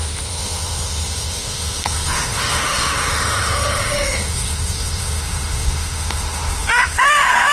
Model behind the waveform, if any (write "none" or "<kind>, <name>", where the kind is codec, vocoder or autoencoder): autoencoder, DAC-VAE